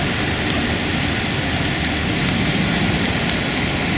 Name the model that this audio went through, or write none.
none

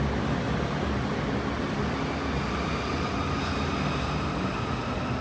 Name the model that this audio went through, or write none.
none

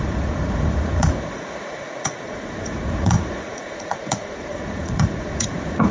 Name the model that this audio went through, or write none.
vocoder, Vocos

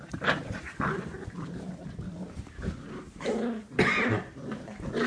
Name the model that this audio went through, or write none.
none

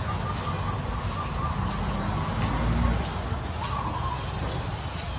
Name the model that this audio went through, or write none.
none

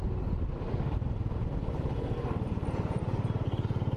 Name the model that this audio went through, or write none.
none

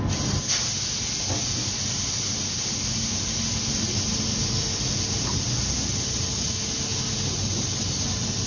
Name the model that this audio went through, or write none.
none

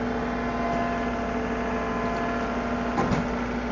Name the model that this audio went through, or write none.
none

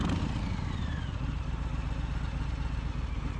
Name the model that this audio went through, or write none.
none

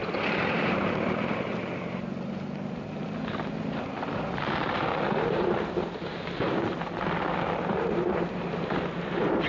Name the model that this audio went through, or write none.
vocoder, BigVGAN v2